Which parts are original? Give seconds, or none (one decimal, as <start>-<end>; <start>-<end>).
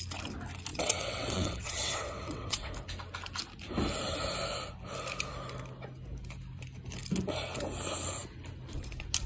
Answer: 0.0-0.7; 2.7-9.3